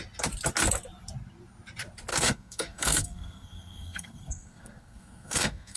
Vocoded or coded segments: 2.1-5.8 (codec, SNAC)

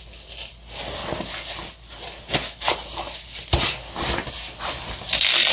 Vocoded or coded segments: none

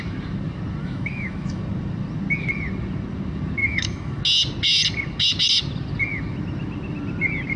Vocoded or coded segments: 0.8-1.6 (autoencoder, DAC-VAE); 3.6-4.2

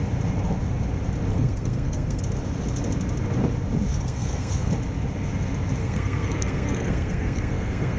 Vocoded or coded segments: 1.3-2.2 (codec, SNAC); 3.9-4.7; 5.8-8.0

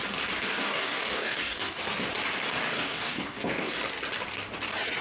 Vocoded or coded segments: 0.5-1.8 (codec, DAC); 2.7-3.7

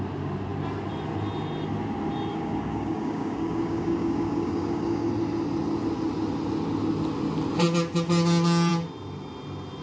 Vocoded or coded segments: 2.3-5.1 (codec, DAC)

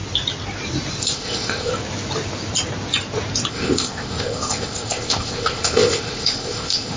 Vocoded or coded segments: 1.0-1.7 (codec, ZipCodec); 3.5-7.0

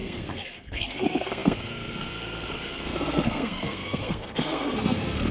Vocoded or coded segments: 0.0-5.3 (codec, SNAC)